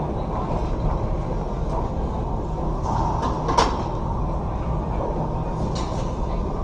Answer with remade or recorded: recorded